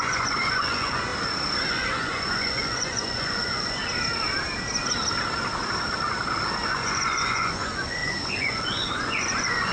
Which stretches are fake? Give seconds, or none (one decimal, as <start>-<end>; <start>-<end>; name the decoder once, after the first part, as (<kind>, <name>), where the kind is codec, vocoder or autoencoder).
0.0-1.1 (vocoder, Vocos); 1.7-3.8; 6.7-9.7